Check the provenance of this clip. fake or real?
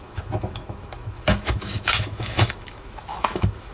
fake